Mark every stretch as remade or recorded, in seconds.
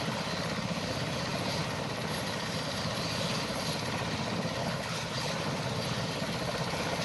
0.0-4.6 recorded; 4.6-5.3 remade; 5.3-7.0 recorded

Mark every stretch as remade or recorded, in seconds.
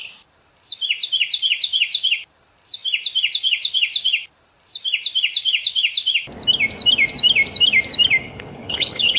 0.0-8.2 recorded; 8.2-9.2 remade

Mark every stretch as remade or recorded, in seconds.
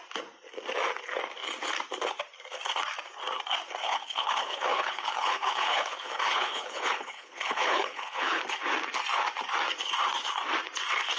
0.0-3.8 recorded; 3.8-8.4 remade; 8.4-11.2 recorded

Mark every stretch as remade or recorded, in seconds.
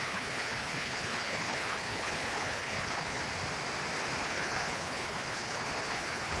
0.0-3.2 remade; 3.2-4.2 recorded; 4.2-6.4 remade